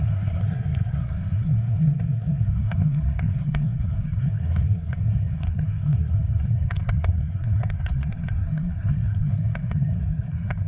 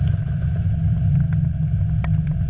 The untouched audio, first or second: second